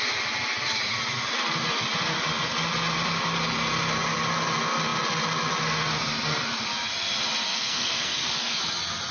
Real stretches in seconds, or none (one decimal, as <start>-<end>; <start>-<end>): 0.0-7.5; 8.6-9.1